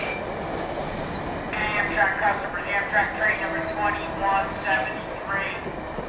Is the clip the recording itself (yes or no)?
yes